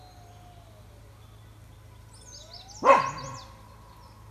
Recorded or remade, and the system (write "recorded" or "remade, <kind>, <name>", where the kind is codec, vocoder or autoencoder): recorded